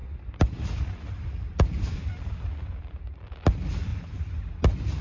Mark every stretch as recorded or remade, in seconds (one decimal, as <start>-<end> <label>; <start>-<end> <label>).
0.0-3.0 remade; 3.0-3.9 recorded; 3.9-4.5 remade; 4.5-5.0 recorded